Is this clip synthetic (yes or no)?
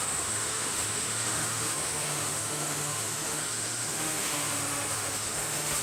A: yes